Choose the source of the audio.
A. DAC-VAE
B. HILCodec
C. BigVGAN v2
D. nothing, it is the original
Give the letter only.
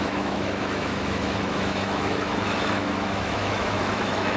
A